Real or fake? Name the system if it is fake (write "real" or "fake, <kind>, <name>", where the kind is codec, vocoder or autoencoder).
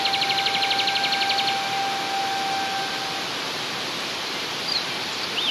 real